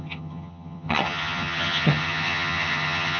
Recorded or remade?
remade